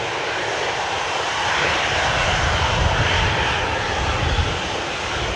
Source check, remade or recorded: recorded